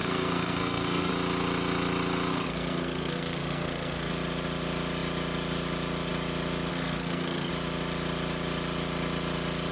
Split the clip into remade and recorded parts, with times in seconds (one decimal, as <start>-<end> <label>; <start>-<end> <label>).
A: 0.0-1.1 remade; 1.1-2.3 recorded; 2.3-4.1 remade; 4.1-6.7 recorded; 6.7-7.5 remade; 7.5-9.7 recorded